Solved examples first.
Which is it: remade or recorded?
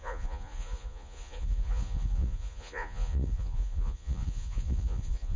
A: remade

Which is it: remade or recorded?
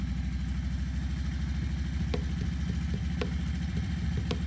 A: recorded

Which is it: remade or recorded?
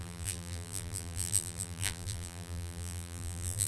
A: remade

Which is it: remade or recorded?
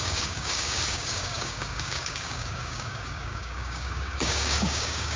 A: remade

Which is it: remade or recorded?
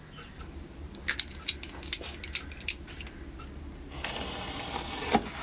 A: recorded